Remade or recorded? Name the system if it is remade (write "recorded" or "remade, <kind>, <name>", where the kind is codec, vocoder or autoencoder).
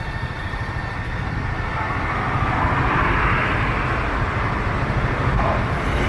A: recorded